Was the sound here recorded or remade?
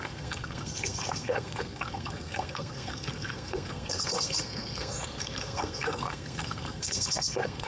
remade